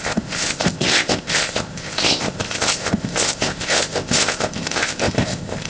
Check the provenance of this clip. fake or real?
fake